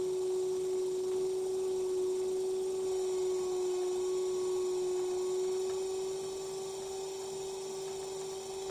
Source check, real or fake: real